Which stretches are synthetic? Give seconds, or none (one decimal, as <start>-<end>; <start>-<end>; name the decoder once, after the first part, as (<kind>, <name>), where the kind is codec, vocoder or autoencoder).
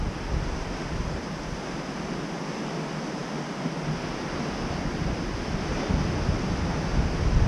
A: none